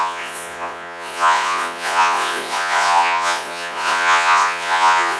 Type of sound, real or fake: fake